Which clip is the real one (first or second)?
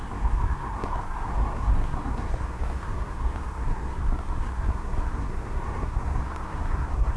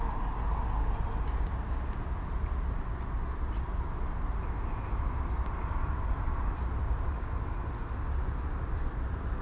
second